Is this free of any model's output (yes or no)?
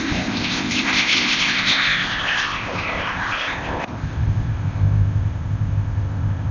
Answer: no